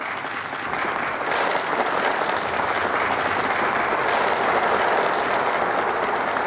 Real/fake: real